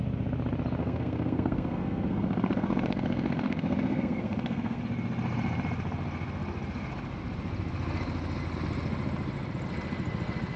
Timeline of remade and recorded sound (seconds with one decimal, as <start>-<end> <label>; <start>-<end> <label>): 0.0-0.8 recorded; 0.8-4.8 remade; 4.8-10.6 recorded